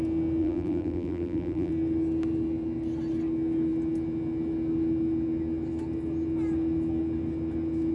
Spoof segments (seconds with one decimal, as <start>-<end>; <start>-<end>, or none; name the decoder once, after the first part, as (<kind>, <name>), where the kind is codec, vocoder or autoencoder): 0.4-1.7 (vocoder, BigVGAN v2)